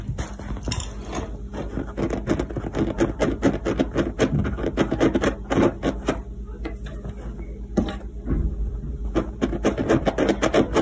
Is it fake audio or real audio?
real